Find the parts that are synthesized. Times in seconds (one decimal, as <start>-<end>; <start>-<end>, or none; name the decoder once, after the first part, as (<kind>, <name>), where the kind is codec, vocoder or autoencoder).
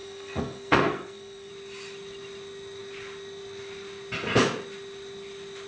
0.0-1.5 (codec, SNAC)